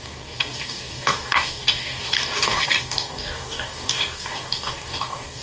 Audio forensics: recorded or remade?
remade